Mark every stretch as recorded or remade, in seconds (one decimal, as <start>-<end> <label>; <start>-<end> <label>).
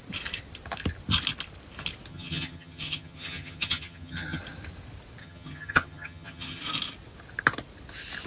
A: 0.0-2.1 recorded; 2.1-4.4 remade; 4.4-5.2 recorded; 5.2-6.6 remade; 6.6-8.3 recorded